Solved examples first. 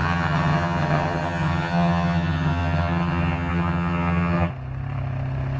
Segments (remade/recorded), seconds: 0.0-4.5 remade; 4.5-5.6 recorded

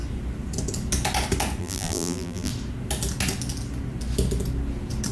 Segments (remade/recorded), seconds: 0.0-1.6 recorded; 1.6-2.5 remade; 2.5-5.1 recorded

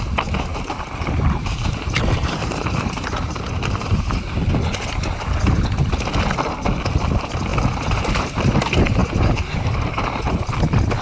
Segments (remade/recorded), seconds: 0.0-0.5 recorded; 0.5-4.5 remade; 4.5-7.5 recorded; 7.5-8.4 remade; 8.4-9.0 recorded; 9.0-10.4 remade; 10.4-11.0 recorded

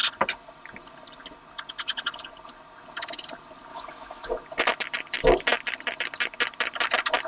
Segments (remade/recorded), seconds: 0.0-3.7 recorded; 3.7-4.3 remade; 4.3-7.3 recorded

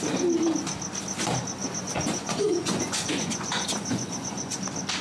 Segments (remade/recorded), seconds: 0.0-1.6 recorded; 1.6-4.6 remade; 4.6-5.0 recorded

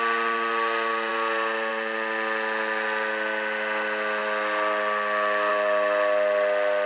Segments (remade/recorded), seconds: 0.0-6.9 recorded

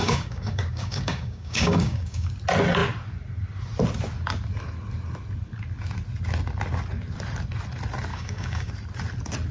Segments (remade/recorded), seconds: 0.0-2.3 remade; 2.3-8.1 recorded; 8.1-8.7 remade; 8.7-9.5 recorded

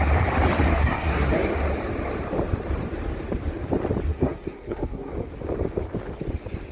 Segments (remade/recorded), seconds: 0.0-0.7 recorded; 0.7-1.3 remade; 1.3-4.1 recorded; 4.1-5.1 remade; 5.1-6.7 recorded